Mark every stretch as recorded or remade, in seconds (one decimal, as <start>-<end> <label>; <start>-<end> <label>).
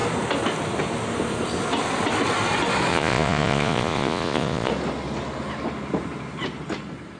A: 0.0-2.9 recorded; 2.9-4.7 remade; 4.7-7.2 recorded